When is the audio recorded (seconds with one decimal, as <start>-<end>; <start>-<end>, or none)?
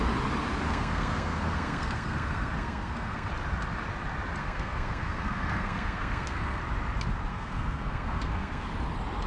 0.0-0.7; 3.3-4.4; 6.6-7.3; 8.7-9.3